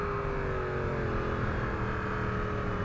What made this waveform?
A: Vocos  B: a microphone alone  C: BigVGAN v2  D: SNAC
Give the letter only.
B